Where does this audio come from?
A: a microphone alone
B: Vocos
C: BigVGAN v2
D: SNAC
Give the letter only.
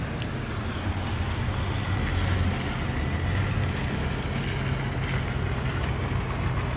A